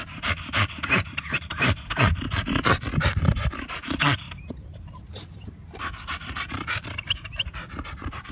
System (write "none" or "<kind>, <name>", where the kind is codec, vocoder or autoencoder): vocoder, BigVGAN v2